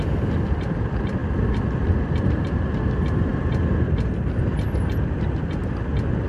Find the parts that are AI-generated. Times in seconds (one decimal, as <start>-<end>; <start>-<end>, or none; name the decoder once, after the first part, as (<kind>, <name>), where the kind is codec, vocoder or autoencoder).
none